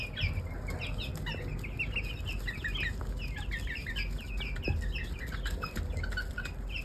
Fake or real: real